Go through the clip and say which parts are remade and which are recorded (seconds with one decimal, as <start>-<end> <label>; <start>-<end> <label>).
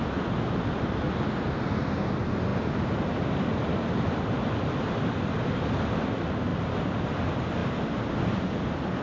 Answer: 0.0-6.5 recorded; 6.5-7.0 remade; 7.0-9.0 recorded